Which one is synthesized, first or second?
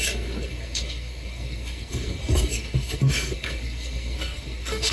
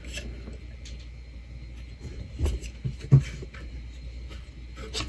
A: first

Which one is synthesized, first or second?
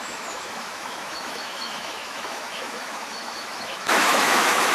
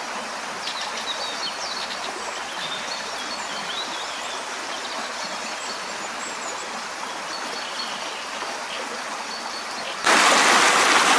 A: first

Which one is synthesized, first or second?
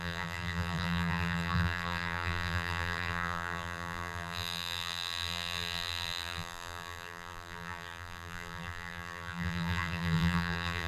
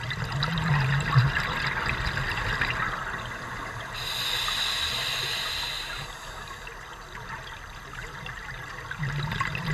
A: first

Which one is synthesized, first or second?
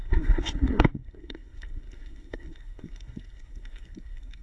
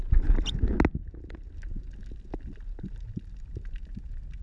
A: first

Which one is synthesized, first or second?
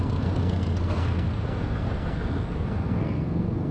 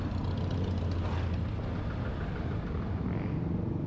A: first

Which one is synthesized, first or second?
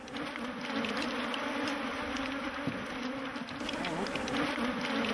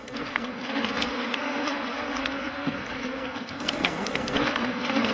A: second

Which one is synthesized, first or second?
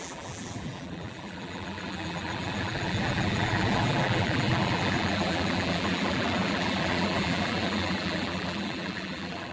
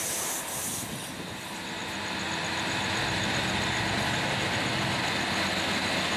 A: first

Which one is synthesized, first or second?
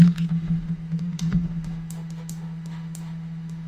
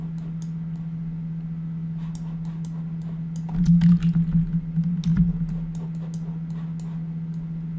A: first